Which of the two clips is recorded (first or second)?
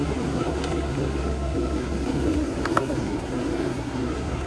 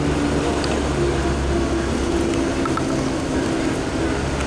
second